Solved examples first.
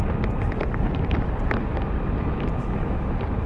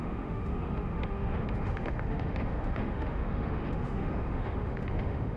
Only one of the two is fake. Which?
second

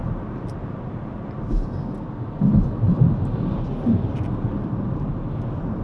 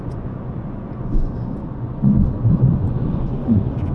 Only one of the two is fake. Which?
second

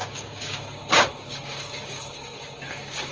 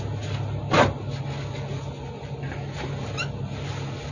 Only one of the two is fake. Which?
first